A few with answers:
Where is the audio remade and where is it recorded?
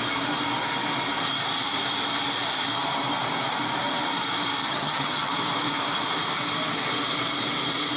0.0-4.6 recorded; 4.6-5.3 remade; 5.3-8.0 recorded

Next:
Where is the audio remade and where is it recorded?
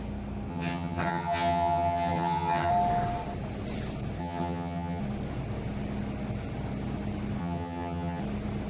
0.0-0.5 recorded; 0.5-2.7 remade; 2.7-4.2 recorded; 4.2-5.0 remade; 5.0-7.4 recorded; 7.4-8.2 remade; 8.2-8.7 recorded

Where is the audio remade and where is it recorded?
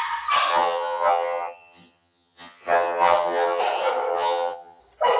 0.0-0.5 recorded; 0.5-3.6 remade; 3.6-4.1 recorded; 4.1-4.8 remade; 4.8-5.2 recorded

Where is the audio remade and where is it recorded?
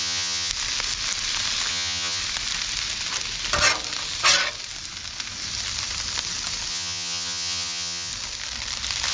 0.0-0.5 remade; 0.5-1.7 recorded; 1.7-2.2 remade; 2.2-6.7 recorded; 6.7-8.1 remade; 8.1-9.1 recorded